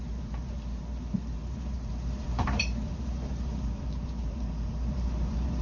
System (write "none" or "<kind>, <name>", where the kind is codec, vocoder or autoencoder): vocoder, BigVGAN v2